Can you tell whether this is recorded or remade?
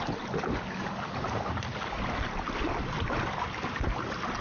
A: recorded